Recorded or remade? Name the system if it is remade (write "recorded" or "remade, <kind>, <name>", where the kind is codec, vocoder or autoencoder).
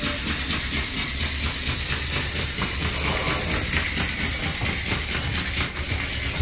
recorded